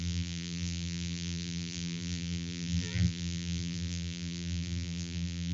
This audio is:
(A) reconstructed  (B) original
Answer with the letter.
A